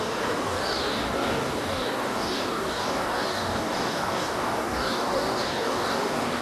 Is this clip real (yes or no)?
no